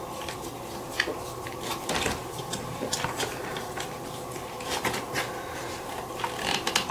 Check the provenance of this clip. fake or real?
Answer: real